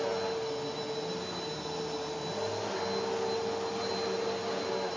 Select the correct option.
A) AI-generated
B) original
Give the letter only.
B